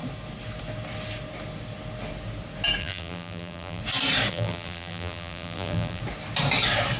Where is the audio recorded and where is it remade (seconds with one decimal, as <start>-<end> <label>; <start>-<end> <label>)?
0.0-2.8 recorded; 2.8-3.8 remade; 3.8-4.3 recorded; 4.3-6.0 remade; 6.0-7.0 recorded